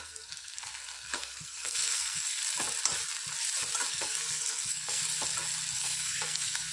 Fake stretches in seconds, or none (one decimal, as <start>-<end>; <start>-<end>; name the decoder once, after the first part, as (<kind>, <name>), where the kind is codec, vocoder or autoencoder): 0.0-2.4 (codec, SNAC); 3.9-5.0; 5.8-6.7